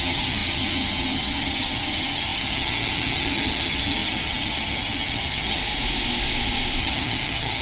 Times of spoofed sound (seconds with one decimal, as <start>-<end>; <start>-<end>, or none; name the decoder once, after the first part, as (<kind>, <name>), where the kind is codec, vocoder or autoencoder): 0.0-5.6 (vocoder, HiFi-GAN); 6.8-7.6